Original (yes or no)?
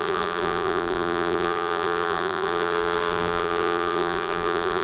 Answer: no